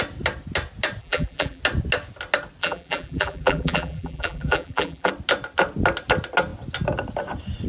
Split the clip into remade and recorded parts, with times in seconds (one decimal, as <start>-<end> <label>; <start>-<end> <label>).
0.0-1.0 recorded; 1.0-1.6 remade; 1.6-2.6 recorded; 2.6-5.1 remade; 5.1-7.7 recorded